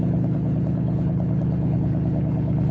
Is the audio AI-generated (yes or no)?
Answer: yes